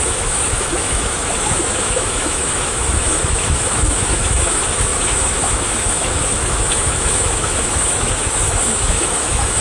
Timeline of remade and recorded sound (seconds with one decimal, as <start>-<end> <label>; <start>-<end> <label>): 0.0-9.6 remade